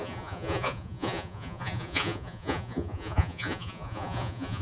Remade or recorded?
remade